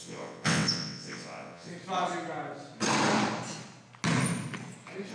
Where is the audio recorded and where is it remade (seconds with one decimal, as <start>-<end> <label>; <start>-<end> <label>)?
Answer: 0.0-1.7 remade; 1.7-5.1 recorded